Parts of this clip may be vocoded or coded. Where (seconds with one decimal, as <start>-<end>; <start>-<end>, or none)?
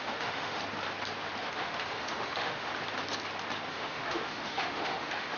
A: 0.0-0.6; 1.4-2.7; 3.7-5.4